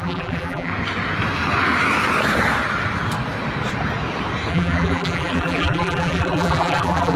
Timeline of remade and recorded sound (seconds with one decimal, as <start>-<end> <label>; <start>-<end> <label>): 0.0-0.7 remade; 0.7-4.5 recorded; 4.5-7.2 remade